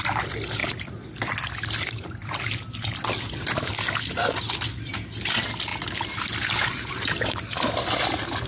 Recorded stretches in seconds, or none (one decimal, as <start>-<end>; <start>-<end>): 0.0-0.6; 3.7-8.5